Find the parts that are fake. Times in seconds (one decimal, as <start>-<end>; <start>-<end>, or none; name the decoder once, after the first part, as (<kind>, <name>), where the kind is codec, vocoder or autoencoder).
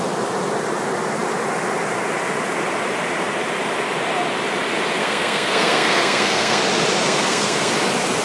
5.0-6.6 (codec, SNAC); 7.0-7.7